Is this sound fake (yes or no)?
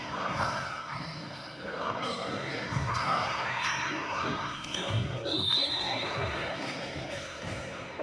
yes